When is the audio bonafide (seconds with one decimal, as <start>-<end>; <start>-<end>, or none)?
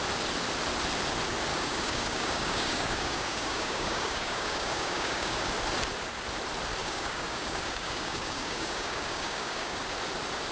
0.0-1.5; 5.5-6.8; 9.8-10.5